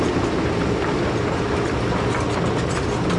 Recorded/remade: recorded